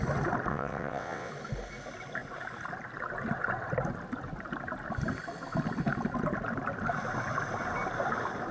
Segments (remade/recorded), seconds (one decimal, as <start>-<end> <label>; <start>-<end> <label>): 0.0-0.5 recorded; 0.5-1.3 remade; 1.3-8.5 recorded